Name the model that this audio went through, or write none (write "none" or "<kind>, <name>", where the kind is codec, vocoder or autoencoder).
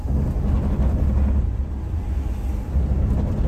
none